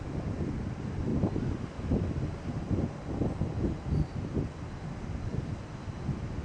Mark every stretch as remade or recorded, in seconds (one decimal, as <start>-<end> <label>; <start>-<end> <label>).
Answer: 0.0-6.4 recorded